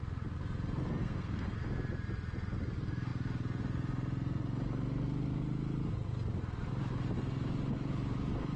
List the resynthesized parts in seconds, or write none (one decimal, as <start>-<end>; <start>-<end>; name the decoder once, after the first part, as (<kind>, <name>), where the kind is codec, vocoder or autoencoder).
1.0-1.6 (codec, SNAC)